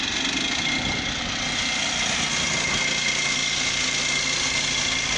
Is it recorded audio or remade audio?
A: recorded